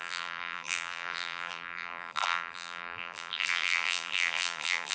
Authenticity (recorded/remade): remade